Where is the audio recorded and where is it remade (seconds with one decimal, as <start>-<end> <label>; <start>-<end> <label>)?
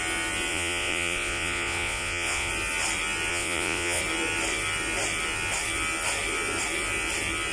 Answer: 0.0-0.5 recorded; 0.5-2.5 remade; 2.5-3.3 recorded; 3.3-4.0 remade; 4.0-7.5 recorded